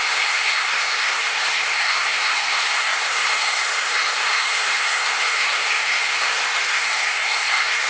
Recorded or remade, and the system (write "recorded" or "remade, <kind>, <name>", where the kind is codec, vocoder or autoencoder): remade, codec, SNAC